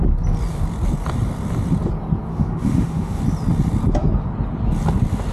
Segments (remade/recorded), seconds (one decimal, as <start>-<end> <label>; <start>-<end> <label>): 0.0-2.3 recorded; 2.3-3.2 remade; 3.2-5.3 recorded